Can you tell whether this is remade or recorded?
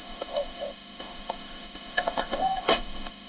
remade